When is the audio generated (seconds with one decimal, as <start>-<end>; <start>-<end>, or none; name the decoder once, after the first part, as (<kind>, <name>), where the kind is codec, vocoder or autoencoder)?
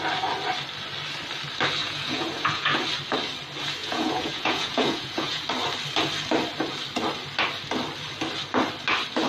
1.8-2.8 (vocoder, Vocos); 3.8-5.4